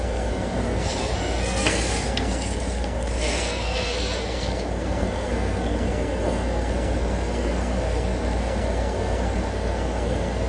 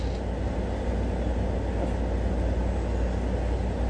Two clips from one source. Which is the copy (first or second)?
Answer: first